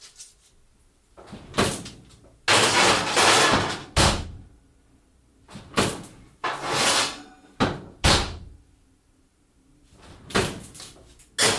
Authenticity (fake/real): real